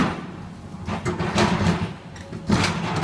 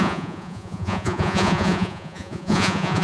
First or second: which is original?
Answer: first